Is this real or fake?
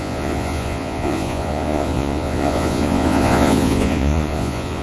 fake